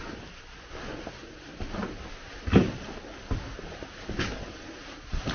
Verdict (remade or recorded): recorded